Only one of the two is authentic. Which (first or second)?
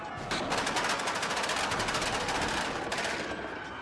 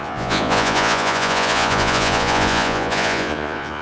first